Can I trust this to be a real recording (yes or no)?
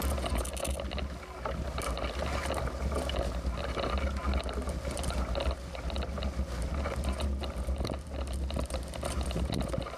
yes